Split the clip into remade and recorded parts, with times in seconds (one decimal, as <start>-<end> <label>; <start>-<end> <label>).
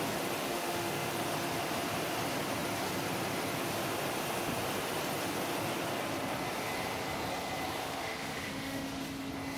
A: 0.0-0.4 recorded; 0.4-1.1 remade; 1.1-7.8 recorded; 7.8-9.0 remade; 9.0-9.6 recorded